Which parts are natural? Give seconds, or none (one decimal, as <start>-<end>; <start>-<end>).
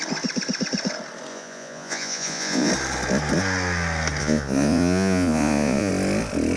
0.0-1.3; 2.7-4.2; 5.9-6.6